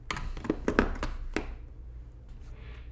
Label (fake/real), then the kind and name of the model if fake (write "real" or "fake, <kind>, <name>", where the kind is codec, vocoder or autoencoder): real